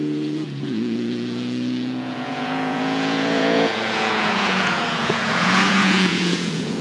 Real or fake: fake